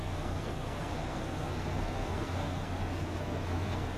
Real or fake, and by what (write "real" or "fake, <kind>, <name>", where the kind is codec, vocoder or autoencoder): fake, codec, SNAC